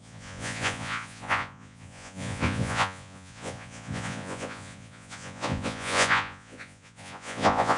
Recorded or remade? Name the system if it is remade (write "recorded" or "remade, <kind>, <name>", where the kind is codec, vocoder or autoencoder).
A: remade, vocoder, Vocos